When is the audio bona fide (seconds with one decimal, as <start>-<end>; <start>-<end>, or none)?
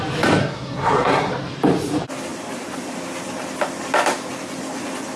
0.0-0.4; 1.3-5.2